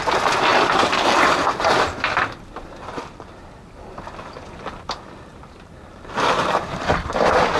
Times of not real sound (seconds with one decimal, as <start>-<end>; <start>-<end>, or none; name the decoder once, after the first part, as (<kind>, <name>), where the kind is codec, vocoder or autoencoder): 5.3-6.9 (vocoder, BigVGAN v2)